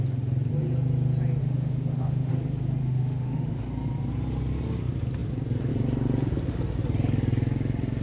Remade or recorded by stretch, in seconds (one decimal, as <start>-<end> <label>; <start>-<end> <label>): 0.0-1.4 recorded; 1.4-2.3 remade; 2.3-2.8 recorded; 2.8-3.5 remade; 3.5-8.0 recorded